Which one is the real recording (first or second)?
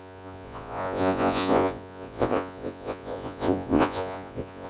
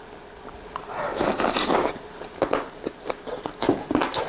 second